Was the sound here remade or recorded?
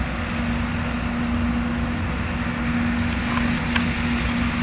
recorded